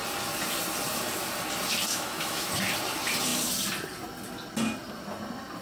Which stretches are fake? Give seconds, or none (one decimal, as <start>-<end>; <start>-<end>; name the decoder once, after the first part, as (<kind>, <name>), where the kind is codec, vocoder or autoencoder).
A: 1.9-2.5 (autoencoder, DAC-VAE)